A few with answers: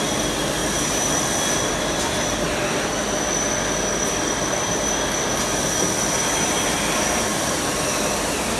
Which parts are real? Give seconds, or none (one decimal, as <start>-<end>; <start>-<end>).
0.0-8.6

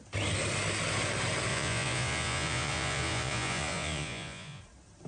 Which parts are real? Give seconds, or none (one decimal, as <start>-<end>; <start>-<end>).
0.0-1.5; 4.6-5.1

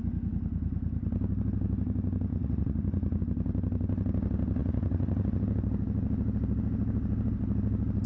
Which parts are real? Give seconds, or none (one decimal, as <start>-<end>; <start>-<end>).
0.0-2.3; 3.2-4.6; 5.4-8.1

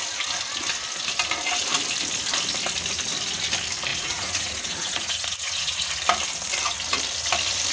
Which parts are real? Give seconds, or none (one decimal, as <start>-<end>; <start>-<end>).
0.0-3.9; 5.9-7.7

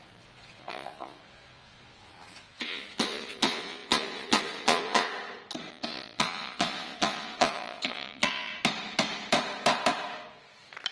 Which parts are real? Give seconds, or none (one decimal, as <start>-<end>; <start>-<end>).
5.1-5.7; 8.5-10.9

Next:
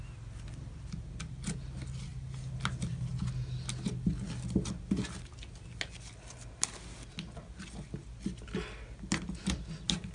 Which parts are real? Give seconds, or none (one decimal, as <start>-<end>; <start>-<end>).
0.0-10.1

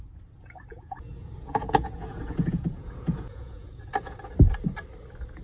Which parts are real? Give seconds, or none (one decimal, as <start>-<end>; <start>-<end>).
0.0-0.7; 3.9-5.4